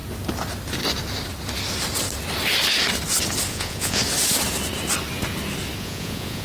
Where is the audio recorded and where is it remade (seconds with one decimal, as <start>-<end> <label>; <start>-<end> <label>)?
0.0-3.5 recorded; 3.5-4.0 remade; 4.0-5.8 recorded; 5.8-6.4 remade